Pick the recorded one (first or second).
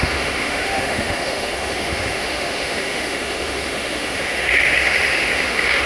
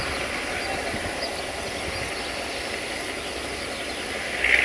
second